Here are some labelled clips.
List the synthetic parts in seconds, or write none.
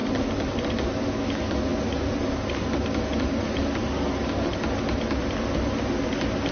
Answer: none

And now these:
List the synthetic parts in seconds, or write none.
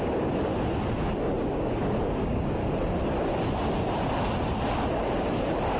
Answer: 0.0-0.5 (codec, DAC); 1.4-2.6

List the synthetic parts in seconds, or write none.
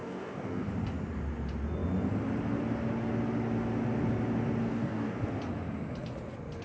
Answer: 0.0-0.7 (codec, DAC); 4.6-5.2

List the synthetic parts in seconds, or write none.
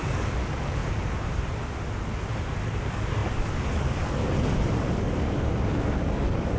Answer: 0.0-0.8 (codec, DAC); 2.8-4.2; 5.0-6.6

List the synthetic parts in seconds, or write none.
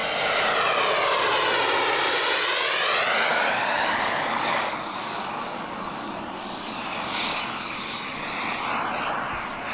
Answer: 3.3-8.2 (codec, DAC)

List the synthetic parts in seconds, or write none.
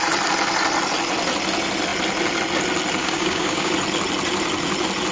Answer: 3.0-3.7 (codec, DAC)